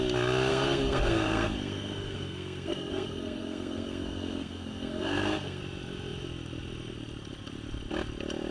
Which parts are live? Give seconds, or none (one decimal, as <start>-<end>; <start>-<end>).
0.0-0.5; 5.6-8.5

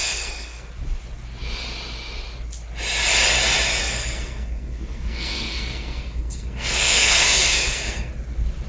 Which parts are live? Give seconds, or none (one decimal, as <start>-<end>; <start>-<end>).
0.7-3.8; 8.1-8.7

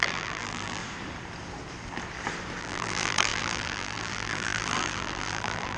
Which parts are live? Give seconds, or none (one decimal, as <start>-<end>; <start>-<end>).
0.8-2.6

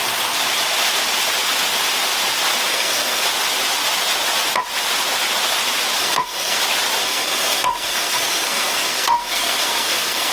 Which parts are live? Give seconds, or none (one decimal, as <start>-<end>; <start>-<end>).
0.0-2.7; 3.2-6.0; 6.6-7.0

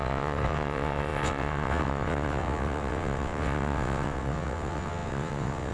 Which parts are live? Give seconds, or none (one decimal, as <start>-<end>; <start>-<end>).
none

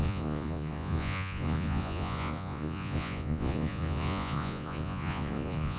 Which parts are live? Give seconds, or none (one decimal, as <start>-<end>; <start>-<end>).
none

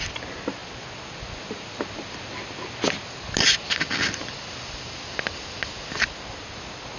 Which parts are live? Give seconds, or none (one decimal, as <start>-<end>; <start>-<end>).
0.0-7.0